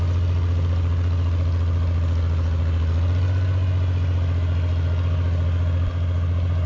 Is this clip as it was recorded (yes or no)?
yes